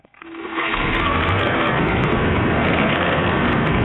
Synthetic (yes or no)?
yes